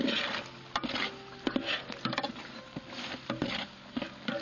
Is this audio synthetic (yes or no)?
no